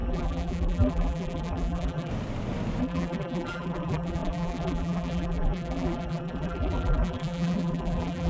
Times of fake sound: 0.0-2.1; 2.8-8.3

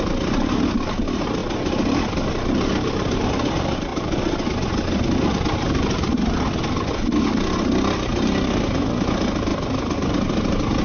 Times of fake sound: none

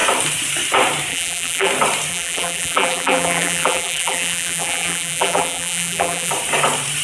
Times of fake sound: 1.1-1.7; 2.1-6.3

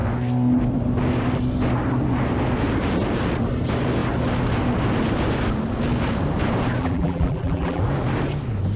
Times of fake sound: 6.8-7.8

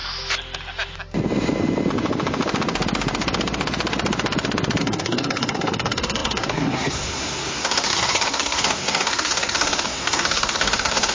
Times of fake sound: 4.8-11.1